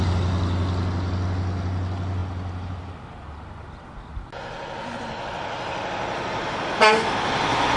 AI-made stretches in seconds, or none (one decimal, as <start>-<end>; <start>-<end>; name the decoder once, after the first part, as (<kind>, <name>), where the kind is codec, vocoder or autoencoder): none